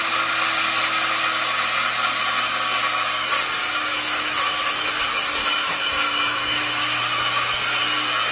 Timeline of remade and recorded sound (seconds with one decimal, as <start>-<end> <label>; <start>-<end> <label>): 0.0-3.6 recorded; 3.6-5.0 remade; 5.0-5.4 recorded; 5.4-7.0 remade; 7.0-8.3 recorded